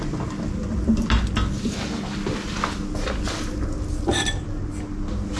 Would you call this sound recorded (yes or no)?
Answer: yes